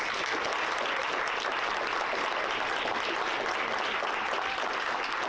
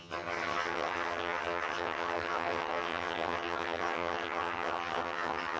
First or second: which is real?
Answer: first